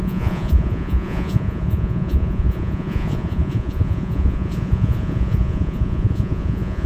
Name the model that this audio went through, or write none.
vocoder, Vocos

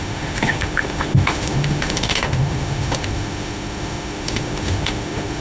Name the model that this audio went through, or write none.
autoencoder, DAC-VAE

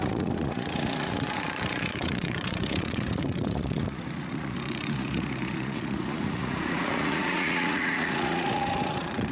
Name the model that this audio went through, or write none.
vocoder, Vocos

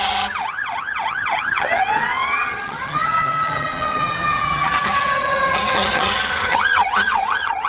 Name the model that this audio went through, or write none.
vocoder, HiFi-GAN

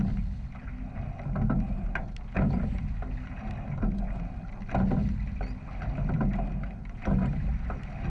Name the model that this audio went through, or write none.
none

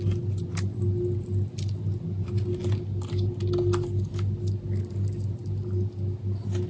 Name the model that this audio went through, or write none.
none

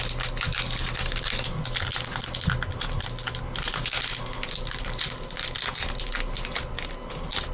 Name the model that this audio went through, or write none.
none